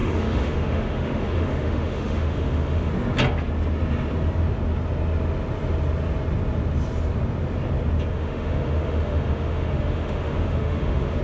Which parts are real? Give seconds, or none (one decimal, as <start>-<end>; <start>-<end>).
2.9-8.1

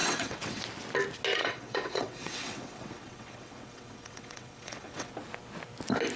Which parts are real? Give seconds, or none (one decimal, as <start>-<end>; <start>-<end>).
0.6-1.4; 5.1-6.2